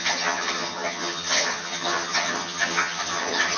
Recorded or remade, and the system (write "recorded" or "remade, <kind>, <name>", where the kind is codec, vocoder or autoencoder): remade, vocoder, HiFi-GAN